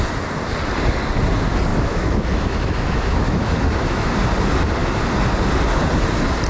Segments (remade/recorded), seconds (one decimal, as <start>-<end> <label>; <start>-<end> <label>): 0.0-1.7 recorded; 1.7-4.2 remade; 4.2-6.5 recorded